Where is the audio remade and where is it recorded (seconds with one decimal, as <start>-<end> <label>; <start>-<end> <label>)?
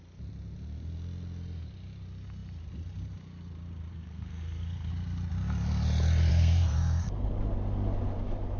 0.0-3.9 recorded; 3.9-4.9 remade; 4.9-6.3 recorded; 6.3-7.3 remade; 7.3-8.6 recorded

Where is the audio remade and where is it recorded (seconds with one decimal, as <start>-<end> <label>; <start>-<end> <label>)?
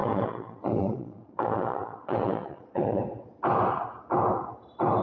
0.0-3.0 remade; 3.0-5.0 recorded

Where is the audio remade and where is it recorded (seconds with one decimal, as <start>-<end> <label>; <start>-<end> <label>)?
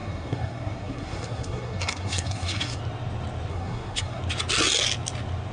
0.0-2.8 remade; 2.8-3.5 recorded; 3.5-4.2 remade; 4.2-5.5 recorded